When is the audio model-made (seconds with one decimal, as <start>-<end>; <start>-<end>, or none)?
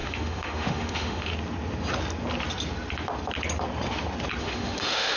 0.0-1.3; 4.4-5.2